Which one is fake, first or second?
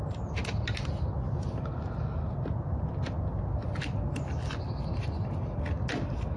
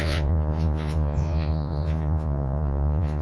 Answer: second